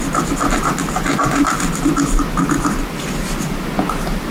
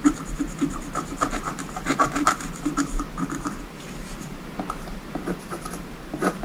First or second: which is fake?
second